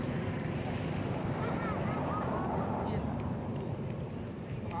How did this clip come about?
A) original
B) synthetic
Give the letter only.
A